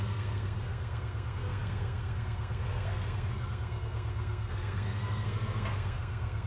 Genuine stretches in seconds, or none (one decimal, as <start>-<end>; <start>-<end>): none